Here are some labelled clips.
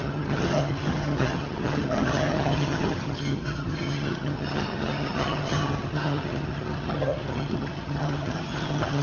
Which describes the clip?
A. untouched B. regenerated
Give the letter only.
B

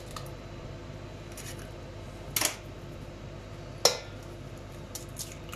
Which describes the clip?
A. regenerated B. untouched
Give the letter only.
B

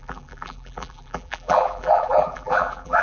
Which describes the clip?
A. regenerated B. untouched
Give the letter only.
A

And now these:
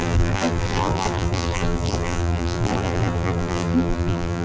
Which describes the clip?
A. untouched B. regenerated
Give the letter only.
B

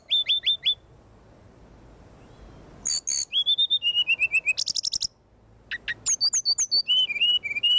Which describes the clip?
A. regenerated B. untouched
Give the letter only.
B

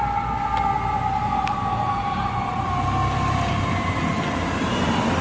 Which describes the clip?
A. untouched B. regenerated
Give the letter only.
A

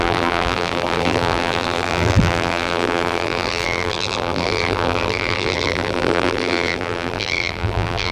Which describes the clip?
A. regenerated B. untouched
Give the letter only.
A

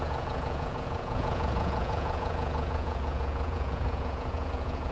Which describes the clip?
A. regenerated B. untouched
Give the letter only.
A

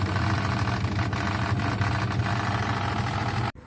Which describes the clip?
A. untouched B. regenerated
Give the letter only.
A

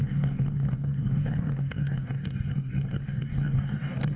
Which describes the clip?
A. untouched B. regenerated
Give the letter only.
B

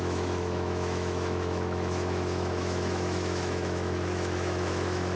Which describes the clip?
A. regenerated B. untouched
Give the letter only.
A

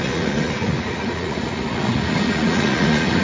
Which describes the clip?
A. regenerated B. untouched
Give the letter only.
A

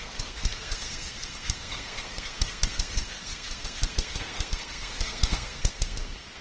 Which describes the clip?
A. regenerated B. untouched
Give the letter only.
A